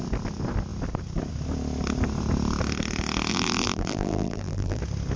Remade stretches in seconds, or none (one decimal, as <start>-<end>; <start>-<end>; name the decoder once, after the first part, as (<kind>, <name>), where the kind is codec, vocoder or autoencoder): 3.3-4.8 (vocoder, BigVGAN v2)